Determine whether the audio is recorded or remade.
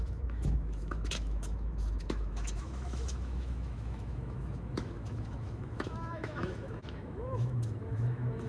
remade